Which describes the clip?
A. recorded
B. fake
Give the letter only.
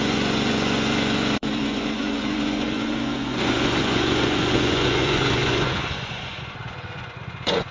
B